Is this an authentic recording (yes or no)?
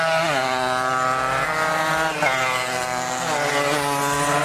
yes